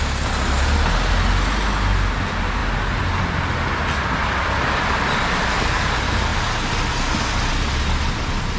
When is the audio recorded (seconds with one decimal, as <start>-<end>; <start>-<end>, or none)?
0.0-8.6